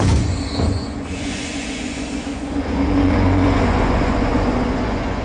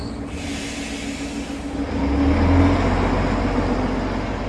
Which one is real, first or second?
second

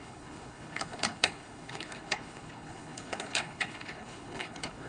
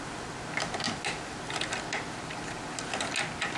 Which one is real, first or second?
second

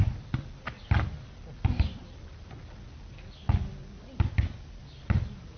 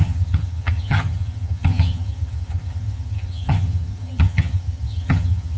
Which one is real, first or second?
first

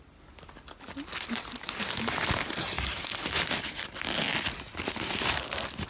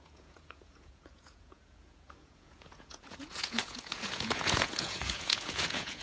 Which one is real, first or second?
first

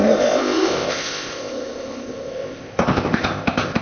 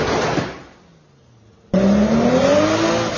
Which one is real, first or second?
second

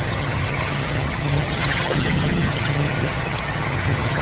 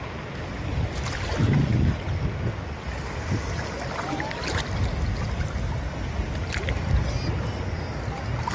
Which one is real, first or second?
second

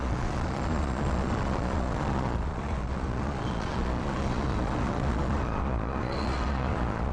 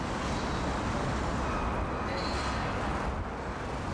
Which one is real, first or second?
second